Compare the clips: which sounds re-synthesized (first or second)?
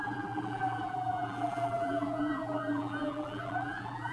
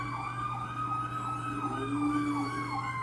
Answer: first